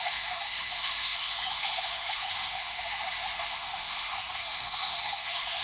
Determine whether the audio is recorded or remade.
remade